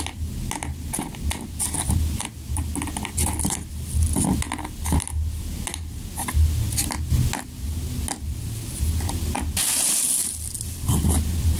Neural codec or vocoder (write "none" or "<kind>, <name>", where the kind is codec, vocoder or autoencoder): none